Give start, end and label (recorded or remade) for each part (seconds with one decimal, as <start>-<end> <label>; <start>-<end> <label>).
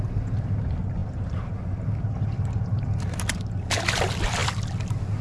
0.0-5.2 recorded